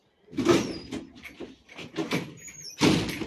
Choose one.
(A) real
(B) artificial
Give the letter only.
A